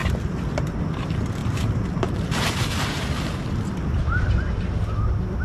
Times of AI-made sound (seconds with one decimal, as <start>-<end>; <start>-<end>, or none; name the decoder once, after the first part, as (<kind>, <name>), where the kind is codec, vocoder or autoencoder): 0.9-5.4 (vocoder, BigVGAN v2)